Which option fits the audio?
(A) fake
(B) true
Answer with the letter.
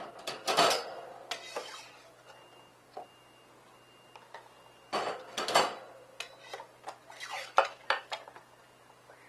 B